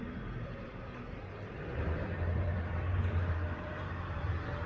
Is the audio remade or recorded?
remade